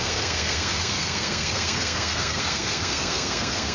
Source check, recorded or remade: remade